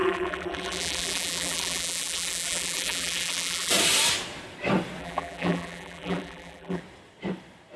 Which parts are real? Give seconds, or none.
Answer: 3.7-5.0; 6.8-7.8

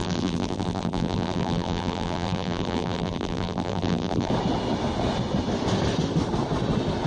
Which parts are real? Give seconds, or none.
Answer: 4.3-7.1

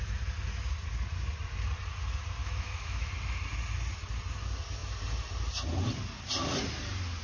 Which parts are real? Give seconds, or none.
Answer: 0.0-2.4; 3.1-7.2

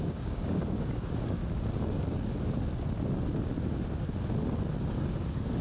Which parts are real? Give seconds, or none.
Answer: 1.4-4.8

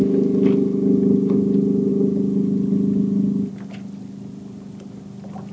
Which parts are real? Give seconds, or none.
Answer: 0.0-5.5

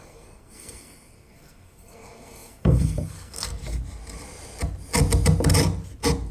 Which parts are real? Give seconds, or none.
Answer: 3.6-6.3

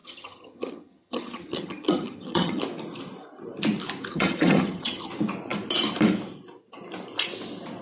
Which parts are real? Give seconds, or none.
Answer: 2.6-4.1; 5.1-7.8